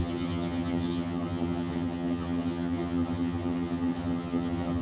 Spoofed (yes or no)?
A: yes